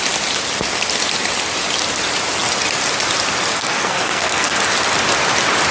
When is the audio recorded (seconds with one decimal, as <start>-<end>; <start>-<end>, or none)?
0.0-3.5; 4.6-5.7